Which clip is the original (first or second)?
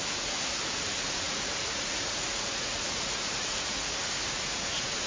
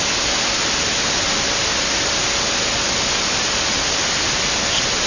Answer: second